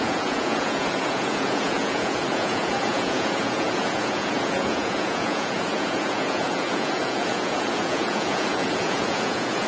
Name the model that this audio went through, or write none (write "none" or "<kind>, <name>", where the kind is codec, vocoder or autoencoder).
vocoder, Vocos